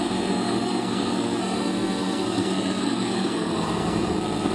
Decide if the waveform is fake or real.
fake